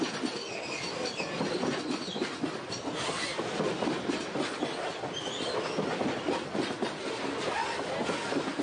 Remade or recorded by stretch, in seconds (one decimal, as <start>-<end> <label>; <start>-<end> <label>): 0.0-8.6 recorded